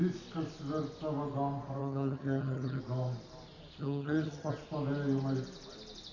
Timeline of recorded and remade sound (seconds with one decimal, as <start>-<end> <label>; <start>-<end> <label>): 0.0-1.8 recorded; 1.8-2.8 remade; 2.8-3.8 recorded; 3.8-4.5 remade; 4.5-6.1 recorded